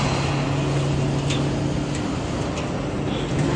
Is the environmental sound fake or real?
real